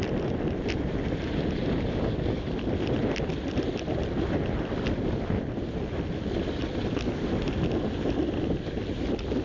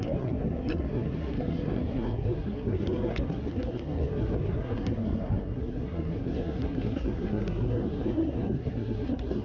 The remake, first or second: second